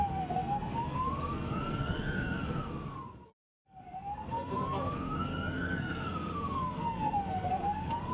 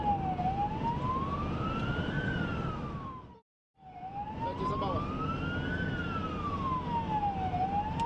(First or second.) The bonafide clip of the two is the second